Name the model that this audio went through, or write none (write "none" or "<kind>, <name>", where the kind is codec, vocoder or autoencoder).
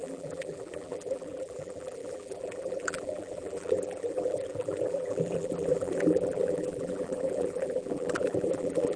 vocoder, BigVGAN v2